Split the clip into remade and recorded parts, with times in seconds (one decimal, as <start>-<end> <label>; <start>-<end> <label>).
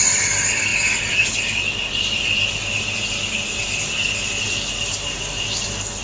0.0-6.0 recorded